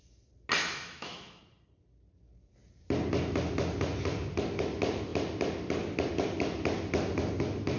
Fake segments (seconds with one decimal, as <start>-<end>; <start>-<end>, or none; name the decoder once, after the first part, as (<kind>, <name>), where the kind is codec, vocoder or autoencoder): 0.6-1.4 (autoencoder, DAC-VAE)